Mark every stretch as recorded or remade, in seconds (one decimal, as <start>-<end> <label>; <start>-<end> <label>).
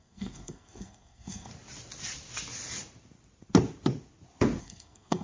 0.0-1.5 remade; 1.5-4.6 recorded; 4.6-5.2 remade